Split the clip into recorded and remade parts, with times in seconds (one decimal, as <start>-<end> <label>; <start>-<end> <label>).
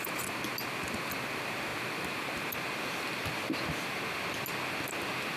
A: 0.0-5.4 recorded